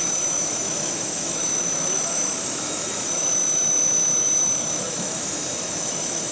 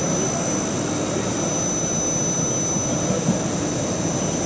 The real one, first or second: second